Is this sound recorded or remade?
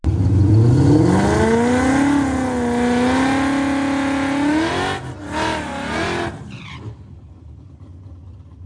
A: recorded